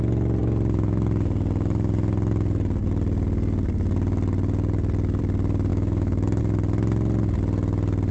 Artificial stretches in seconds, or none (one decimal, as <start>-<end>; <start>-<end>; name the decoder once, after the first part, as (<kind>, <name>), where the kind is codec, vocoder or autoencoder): 5.7-6.4 (autoencoder, DAC-VAE)